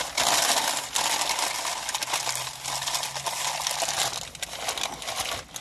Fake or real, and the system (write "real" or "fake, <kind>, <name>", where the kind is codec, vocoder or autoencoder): real